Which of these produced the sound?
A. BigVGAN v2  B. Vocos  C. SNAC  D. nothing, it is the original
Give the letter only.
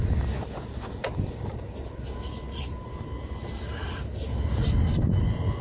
D